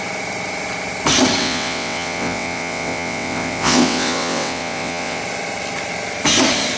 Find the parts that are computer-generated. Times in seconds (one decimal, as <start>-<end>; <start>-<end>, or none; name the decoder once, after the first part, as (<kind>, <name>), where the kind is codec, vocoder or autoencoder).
1.4-5.2 (vocoder, WaveNeXt)